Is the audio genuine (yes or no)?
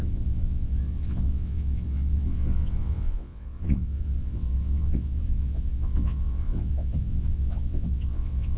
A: no